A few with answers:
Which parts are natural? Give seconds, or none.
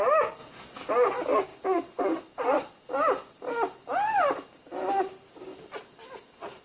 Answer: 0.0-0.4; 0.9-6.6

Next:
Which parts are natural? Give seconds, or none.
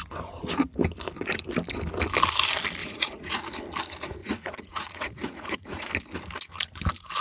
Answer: 0.0-2.8; 3.4-4.2; 5.9-7.2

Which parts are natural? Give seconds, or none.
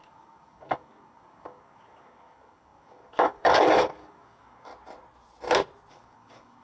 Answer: 4.7-5.9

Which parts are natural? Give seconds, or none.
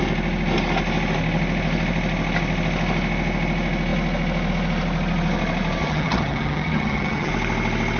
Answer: 0.0-5.8; 7.3-8.0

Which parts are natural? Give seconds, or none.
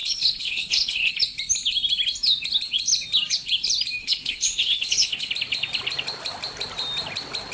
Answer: 1.1-4.0; 5.3-7.5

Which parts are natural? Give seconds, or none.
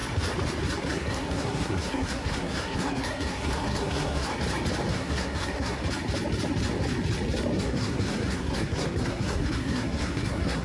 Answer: 0.0-0.8; 4.3-4.9; 5.8-7.6